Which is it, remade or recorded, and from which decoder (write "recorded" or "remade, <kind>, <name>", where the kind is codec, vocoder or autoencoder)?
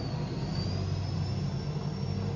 recorded